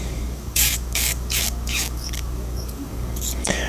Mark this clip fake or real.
fake